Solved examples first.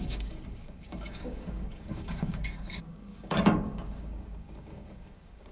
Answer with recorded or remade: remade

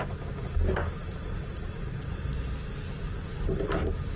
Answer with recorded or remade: recorded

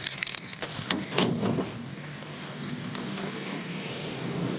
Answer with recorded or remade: remade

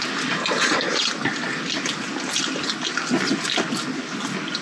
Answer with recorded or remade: recorded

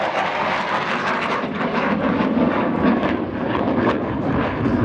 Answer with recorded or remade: remade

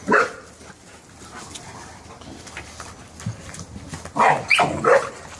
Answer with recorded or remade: recorded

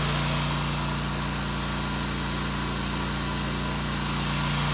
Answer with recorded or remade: recorded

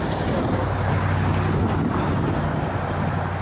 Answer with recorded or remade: recorded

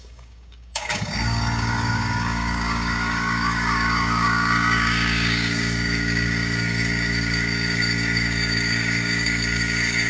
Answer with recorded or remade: remade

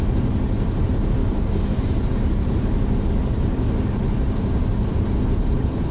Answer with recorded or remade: recorded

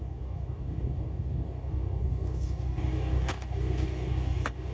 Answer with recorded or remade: remade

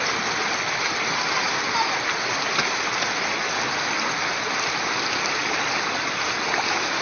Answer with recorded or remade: recorded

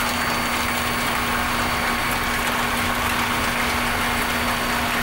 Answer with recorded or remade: recorded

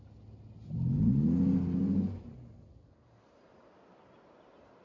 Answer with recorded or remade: recorded